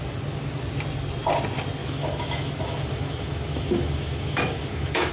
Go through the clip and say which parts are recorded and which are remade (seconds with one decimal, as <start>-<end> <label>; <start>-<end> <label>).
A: 0.0-1.8 recorded; 1.8-5.1 remade